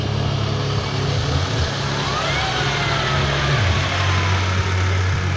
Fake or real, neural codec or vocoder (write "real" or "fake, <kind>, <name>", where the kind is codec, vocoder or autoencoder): real